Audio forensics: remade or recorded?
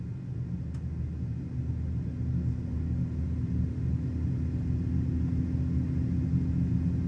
recorded